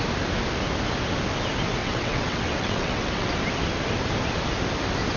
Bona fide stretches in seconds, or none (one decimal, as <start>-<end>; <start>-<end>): 0.0-1.8; 3.3-5.2